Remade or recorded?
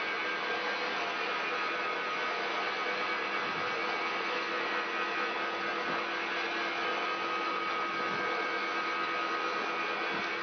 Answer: recorded